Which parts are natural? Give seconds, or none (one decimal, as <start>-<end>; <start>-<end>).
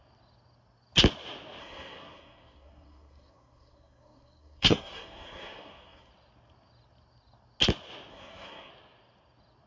0.0-1.6; 6.1-8.1; 8.7-9.7